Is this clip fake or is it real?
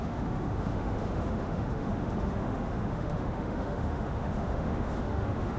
fake